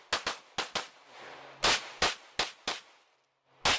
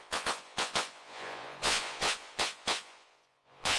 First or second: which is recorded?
first